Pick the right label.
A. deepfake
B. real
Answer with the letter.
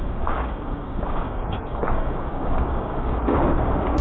A